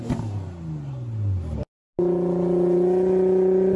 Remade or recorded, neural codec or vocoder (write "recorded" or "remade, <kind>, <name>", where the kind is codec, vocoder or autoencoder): recorded